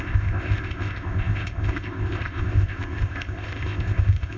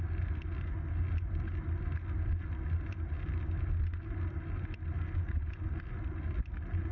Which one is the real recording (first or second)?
second